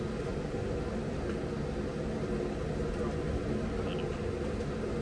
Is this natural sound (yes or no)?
yes